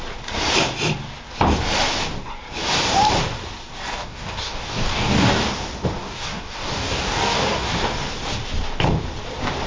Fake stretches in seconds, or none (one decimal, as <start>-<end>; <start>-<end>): 3.9-5.3; 6.0-7.7